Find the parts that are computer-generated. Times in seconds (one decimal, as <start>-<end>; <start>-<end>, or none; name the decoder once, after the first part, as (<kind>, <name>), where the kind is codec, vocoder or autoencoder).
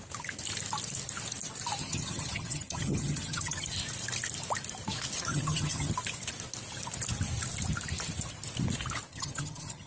1.8-3.7 (vocoder, HiFi-GAN); 5.3-5.9; 9.1-9.9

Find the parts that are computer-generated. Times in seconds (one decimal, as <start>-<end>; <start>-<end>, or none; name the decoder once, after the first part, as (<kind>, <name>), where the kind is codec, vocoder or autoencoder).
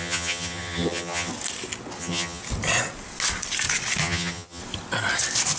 0.0-1.3 (vocoder, HiFi-GAN); 2.0-2.4; 4.0-4.6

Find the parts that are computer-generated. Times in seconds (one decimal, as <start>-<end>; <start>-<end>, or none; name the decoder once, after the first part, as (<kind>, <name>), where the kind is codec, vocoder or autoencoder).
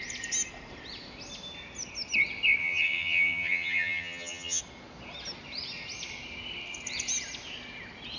2.6-4.6 (vocoder, HiFi-GAN)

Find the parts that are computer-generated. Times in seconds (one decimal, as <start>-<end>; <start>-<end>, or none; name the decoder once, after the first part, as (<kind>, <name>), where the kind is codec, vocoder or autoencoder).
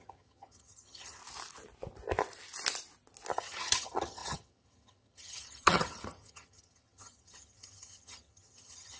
0.0-1.2 (vocoder, HiFi-GAN); 3.3-9.0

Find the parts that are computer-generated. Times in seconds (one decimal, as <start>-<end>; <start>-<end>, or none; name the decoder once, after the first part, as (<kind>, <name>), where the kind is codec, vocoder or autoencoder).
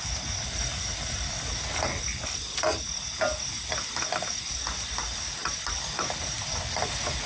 none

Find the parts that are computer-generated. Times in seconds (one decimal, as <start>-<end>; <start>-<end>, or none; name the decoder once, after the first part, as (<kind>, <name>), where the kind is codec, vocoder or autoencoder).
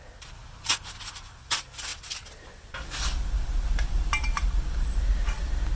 none